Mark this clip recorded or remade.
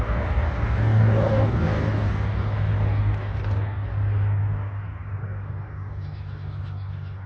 remade